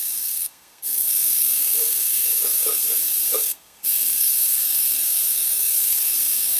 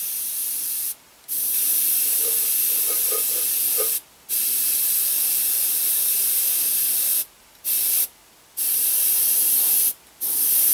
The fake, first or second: first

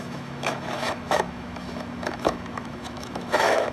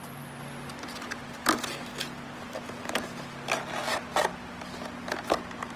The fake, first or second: first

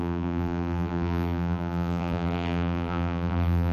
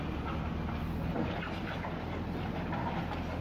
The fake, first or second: first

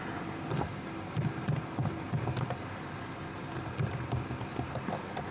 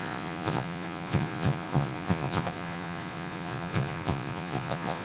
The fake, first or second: second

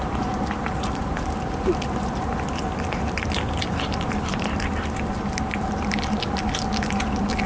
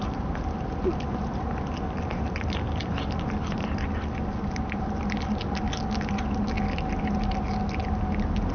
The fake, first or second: first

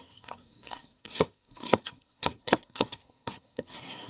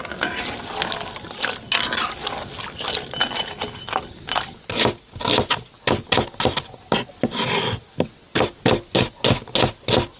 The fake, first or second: first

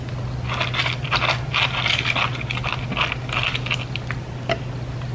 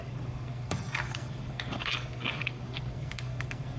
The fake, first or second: second